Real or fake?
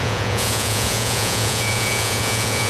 fake